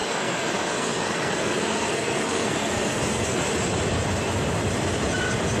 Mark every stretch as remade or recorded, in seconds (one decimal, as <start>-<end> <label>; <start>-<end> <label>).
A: 0.0-3.4 remade; 3.4-5.6 recorded